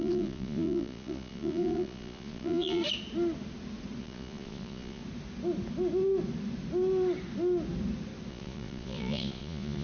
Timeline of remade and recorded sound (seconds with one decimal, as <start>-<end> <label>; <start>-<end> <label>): 0.0-2.8 remade; 2.8-4.0 recorded; 4.0-5.0 remade; 5.0-8.3 recorded; 8.3-9.8 remade